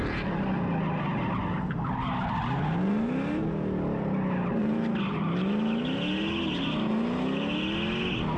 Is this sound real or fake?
real